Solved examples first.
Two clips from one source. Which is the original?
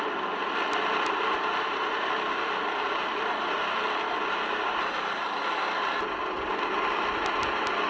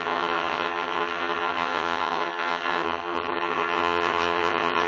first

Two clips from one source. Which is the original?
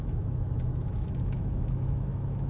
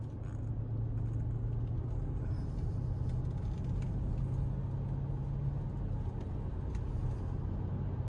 second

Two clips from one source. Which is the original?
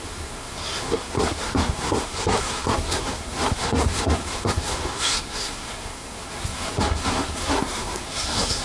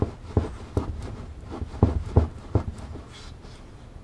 second